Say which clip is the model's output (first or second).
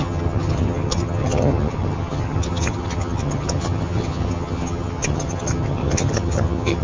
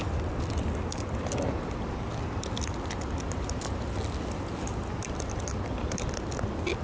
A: first